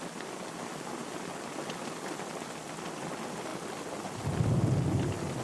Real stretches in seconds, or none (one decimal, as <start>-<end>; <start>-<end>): 0.0-5.4